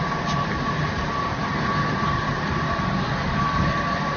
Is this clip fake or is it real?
fake